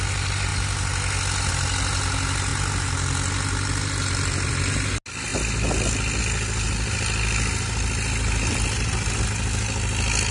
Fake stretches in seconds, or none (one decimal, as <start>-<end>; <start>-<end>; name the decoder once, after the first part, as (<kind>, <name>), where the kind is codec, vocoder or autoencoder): none